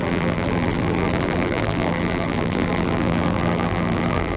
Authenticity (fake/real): fake